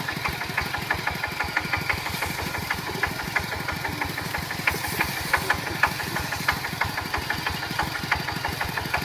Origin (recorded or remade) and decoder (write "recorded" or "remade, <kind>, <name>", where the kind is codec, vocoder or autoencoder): recorded